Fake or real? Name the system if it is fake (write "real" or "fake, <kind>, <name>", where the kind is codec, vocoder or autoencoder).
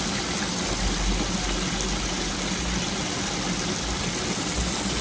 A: real